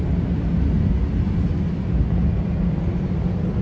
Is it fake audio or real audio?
real